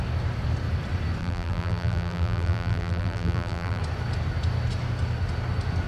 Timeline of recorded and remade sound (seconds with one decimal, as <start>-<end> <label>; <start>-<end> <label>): 0.0-1.2 recorded; 1.2-3.8 remade; 3.8-5.9 recorded